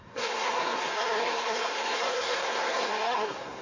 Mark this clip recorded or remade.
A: remade